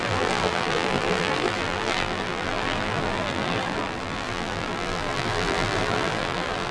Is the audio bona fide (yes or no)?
no